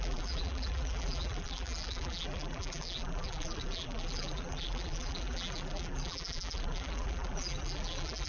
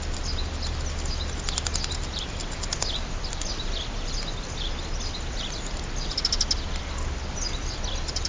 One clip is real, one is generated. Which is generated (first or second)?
first